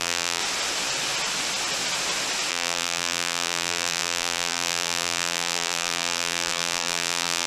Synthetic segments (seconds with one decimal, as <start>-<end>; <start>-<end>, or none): 0.0-0.4; 2.5-7.5